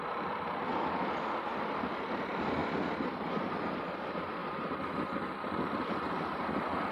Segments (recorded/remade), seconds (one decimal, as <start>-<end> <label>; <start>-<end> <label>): 0.0-0.7 remade; 0.7-1.5 recorded; 1.5-2.6 remade; 2.6-3.7 recorded; 3.7-6.9 remade